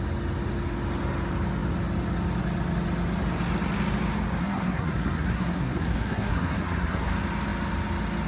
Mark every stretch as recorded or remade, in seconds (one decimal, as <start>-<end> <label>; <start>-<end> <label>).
0.0-4.4 recorded; 4.4-7.1 remade; 7.1-8.3 recorded